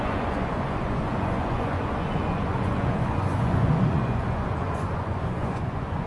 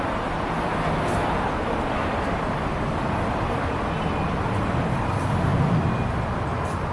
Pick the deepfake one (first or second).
first